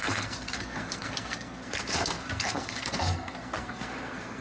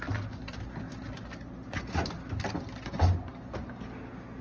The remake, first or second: first